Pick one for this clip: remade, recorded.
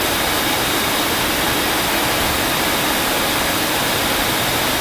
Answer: recorded